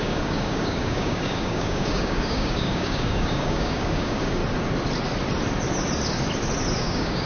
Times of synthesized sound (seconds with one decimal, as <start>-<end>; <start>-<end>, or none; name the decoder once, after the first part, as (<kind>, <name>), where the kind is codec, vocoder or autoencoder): 0.0-4.4 (codec, DAC); 6.8-7.3